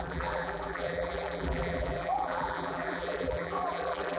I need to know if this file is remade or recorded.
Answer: remade